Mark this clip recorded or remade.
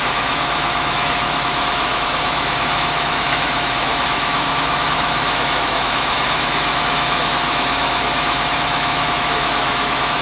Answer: remade